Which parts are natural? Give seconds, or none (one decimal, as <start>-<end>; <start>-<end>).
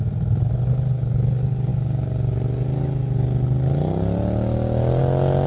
0.0-5.5